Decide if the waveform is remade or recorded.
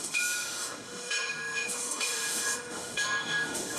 remade